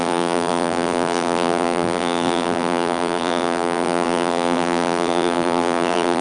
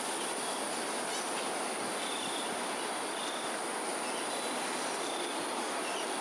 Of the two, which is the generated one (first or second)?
first